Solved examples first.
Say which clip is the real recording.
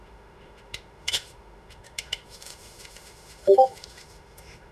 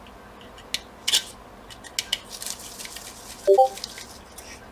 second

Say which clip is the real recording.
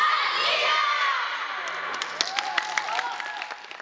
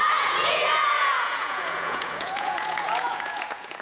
first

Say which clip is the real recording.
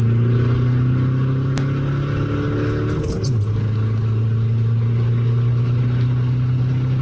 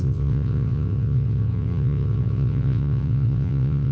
first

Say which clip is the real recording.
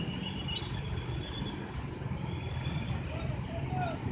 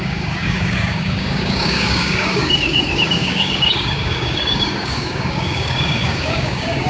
first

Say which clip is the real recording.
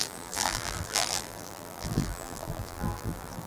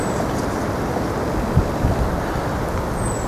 second